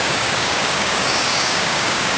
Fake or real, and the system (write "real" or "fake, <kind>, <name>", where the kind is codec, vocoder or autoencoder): fake, codec, DAC